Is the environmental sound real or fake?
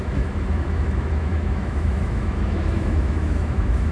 fake